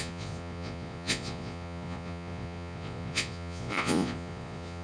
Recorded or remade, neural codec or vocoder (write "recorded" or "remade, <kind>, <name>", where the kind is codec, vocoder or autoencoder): remade, vocoder, Vocos